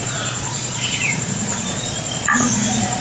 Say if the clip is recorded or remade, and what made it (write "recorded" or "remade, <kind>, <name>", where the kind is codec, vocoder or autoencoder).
remade, vocoder, Vocos